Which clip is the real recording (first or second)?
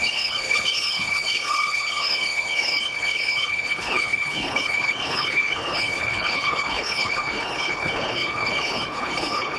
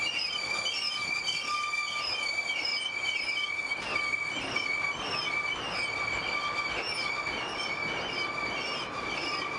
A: second